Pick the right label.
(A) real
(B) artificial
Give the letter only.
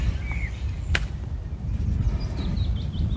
A